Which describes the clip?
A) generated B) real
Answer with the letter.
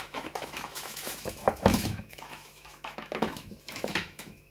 A